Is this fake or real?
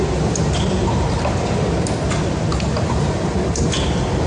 real